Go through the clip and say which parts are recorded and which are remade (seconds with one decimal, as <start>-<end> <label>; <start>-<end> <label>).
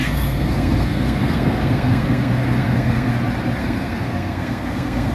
0.0-3.1 remade; 3.1-3.6 recorded; 3.6-5.1 remade